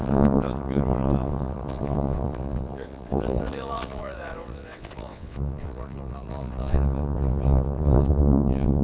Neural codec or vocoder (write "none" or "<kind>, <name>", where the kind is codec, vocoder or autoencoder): vocoder, WaveNeXt